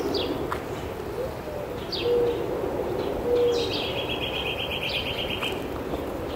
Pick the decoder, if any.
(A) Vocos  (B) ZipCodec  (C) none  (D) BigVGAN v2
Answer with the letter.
C